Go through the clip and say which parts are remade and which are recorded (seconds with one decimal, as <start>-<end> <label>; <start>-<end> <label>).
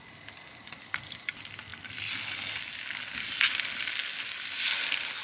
0.0-5.2 recorded